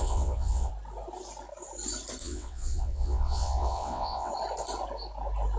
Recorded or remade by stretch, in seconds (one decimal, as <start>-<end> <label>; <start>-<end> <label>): 0.0-0.7 remade; 0.7-2.2 recorded; 2.2-4.3 remade; 4.3-5.6 recorded